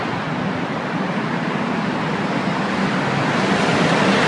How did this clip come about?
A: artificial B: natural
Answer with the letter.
B